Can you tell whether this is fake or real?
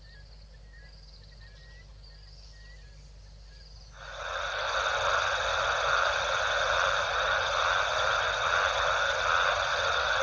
real